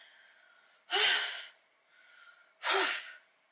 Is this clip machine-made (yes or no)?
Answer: no